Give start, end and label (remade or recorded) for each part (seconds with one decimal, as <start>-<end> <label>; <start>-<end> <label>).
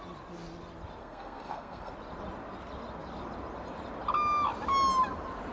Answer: 0.0-1.0 recorded; 1.0-1.9 remade; 1.9-5.5 recorded